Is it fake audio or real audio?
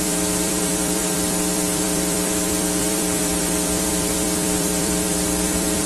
fake